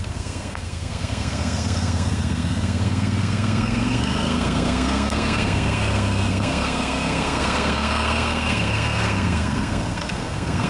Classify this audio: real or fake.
fake